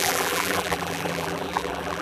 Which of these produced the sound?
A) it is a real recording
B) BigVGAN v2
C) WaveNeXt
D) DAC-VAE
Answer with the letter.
B